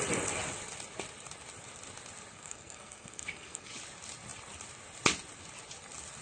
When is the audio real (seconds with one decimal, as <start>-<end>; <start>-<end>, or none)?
0.0-2.3; 3.7-6.2